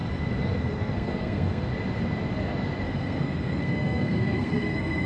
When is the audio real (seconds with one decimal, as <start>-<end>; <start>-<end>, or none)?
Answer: 0.0-0.6; 1.7-2.8